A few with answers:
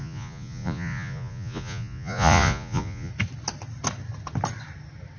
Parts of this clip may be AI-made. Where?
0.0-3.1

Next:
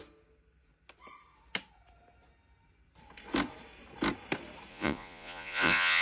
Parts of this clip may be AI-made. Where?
4.7-6.0

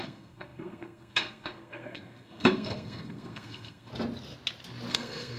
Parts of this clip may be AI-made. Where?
0.0-3.9; 4.9-5.4

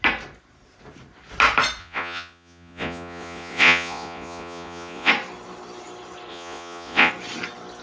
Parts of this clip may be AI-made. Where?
1.8-5.1; 6.3-7.1

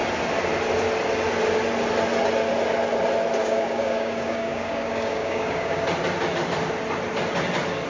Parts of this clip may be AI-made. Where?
3.4-5.8